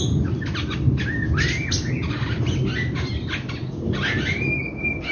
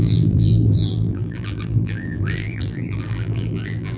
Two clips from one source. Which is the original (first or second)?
first